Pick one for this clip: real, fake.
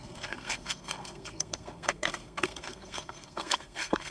fake